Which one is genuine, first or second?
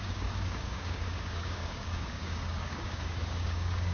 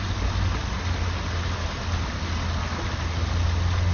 second